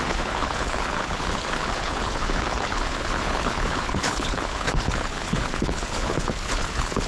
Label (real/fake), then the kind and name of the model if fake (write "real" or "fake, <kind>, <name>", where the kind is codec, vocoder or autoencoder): fake, codec, HILCodec